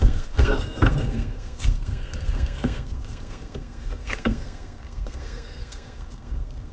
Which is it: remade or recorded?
remade